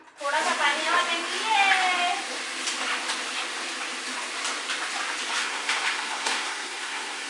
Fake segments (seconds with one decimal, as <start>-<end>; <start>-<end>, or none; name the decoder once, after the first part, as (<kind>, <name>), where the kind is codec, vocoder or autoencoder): 5.4-7.3 (codec, SNAC)